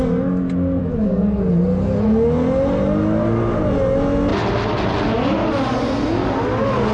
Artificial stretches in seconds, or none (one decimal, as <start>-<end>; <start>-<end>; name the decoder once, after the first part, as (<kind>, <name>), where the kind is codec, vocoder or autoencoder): 0.8-1.4 (codec, DAC)